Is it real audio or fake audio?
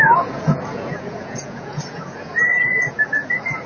fake